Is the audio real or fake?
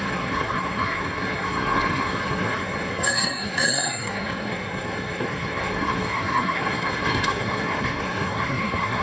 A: fake